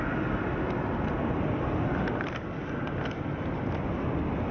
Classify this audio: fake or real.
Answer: real